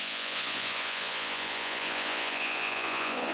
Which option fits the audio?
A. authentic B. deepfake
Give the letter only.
B